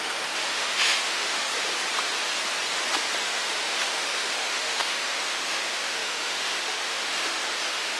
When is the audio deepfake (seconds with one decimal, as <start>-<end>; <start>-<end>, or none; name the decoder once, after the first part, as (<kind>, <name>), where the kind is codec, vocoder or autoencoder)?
0.0-1.5 (autoencoder, DAC-VAE); 3.2-8.0